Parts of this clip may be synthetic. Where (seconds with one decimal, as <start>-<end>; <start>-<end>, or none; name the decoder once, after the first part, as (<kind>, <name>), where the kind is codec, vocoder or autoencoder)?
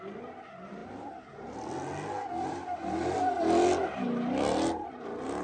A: none